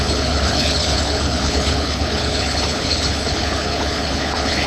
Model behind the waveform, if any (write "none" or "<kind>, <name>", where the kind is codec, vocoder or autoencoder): codec, HILCodec